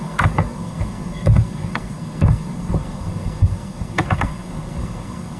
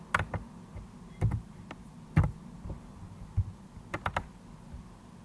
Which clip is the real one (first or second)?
second